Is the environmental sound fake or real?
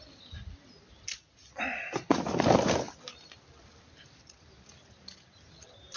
real